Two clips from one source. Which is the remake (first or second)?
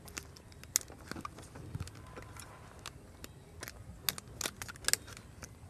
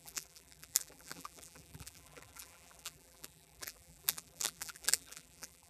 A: second